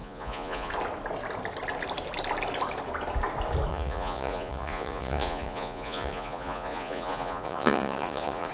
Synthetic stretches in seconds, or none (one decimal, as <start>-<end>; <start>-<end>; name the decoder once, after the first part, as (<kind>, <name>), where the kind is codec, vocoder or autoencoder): 0.0-0.7 (vocoder, Vocos); 3.7-8.5